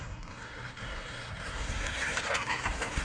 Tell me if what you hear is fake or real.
fake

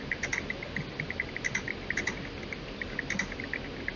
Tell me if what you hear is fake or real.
real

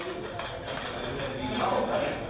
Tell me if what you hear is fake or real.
real